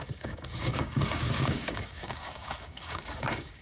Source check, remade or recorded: remade